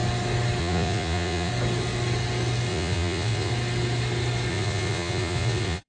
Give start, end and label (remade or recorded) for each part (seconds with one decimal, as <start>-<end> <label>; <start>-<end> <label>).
0.0-0.6 recorded; 0.6-1.5 remade; 1.5-2.7 recorded; 2.7-3.5 remade; 3.5-4.5 recorded; 4.5-5.9 remade